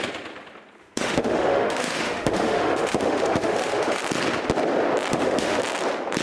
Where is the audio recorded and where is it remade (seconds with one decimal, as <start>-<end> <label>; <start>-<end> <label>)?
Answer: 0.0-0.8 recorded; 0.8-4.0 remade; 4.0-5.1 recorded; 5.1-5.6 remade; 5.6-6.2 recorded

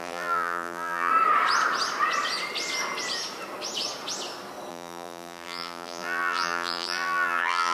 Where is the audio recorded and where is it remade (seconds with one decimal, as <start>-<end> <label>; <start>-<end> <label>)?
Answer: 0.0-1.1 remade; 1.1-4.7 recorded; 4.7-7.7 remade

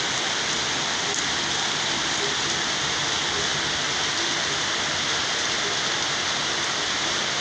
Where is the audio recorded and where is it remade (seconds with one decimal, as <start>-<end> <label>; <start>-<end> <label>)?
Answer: 0.0-7.4 recorded